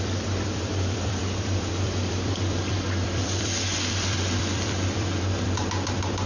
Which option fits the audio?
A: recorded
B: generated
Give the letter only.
B